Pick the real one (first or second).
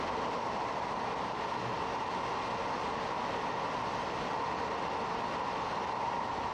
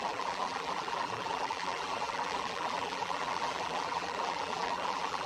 first